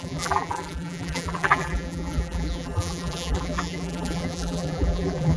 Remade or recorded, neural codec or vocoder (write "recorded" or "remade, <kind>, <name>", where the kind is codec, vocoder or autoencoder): remade, vocoder, BigVGAN v2